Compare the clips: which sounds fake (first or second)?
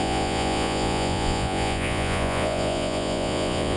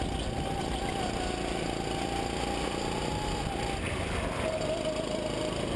first